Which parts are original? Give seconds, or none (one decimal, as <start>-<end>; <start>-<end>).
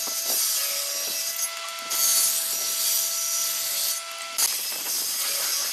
0.0-5.7